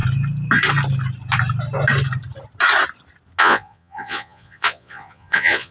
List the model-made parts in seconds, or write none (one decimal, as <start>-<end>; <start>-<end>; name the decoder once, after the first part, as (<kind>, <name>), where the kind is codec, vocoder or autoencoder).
3.4-5.7 (vocoder, Vocos)